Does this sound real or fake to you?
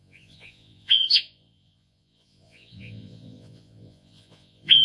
fake